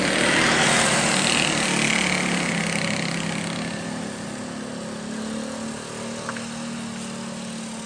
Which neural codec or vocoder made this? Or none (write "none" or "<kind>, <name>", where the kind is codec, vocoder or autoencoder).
none